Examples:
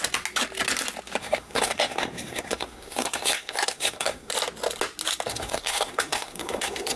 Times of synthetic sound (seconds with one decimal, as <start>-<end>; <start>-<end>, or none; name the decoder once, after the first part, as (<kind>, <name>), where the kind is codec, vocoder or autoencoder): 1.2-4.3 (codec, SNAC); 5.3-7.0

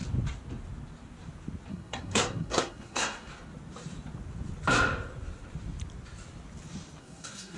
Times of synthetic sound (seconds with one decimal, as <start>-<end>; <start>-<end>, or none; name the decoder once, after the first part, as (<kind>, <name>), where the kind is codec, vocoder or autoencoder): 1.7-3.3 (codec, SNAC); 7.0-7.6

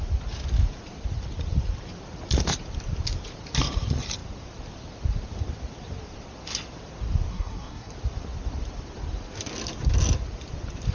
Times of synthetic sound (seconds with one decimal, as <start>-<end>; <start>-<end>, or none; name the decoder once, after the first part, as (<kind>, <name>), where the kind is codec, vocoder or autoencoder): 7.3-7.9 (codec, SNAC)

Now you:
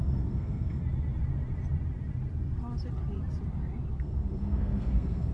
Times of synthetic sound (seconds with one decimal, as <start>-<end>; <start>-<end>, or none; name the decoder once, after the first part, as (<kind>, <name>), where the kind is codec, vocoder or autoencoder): 0.0-0.8 (codec, SNAC); 4.0-5.3